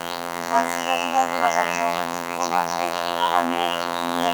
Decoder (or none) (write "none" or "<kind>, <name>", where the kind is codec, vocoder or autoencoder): vocoder, BigVGAN v2